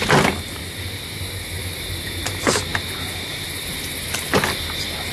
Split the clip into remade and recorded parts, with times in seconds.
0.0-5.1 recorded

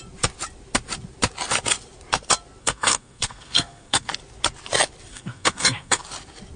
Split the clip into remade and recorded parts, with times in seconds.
0.0-2.6 recorded; 2.6-4.1 remade; 4.1-5.1 recorded; 5.1-6.0 remade; 6.0-6.6 recorded

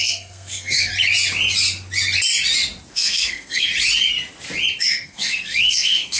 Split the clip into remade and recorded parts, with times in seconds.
0.0-0.9 remade; 0.9-2.9 recorded; 2.9-3.7 remade; 3.7-4.8 recorded; 4.8-6.2 remade

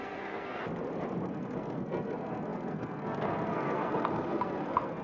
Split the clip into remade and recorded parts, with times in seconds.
0.0-0.6 remade; 0.6-1.2 recorded; 1.2-5.0 remade